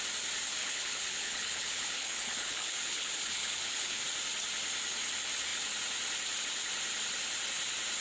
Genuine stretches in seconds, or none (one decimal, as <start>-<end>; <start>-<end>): 0.0-0.6; 4.0-8.0